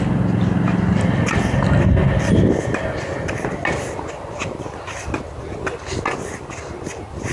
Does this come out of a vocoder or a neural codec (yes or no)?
no